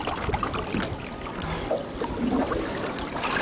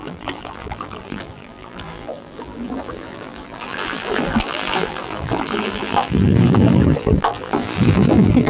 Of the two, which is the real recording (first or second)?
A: first